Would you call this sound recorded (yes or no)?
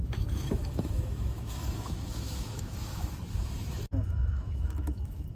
no